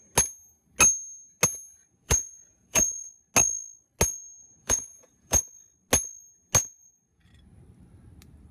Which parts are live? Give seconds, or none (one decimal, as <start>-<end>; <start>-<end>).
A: 0.0-1.8; 3.1-4.4; 5.4-6.6; 7.2-8.5